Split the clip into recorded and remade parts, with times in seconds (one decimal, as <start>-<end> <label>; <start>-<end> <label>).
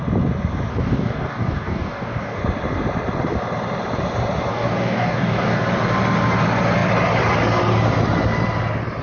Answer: 0.0-0.7 recorded; 0.7-2.4 remade; 2.4-4.5 recorded; 4.5-5.6 remade; 5.6-9.0 recorded